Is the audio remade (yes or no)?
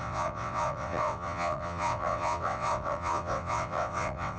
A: yes